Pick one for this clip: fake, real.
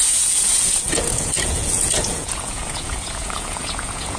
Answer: fake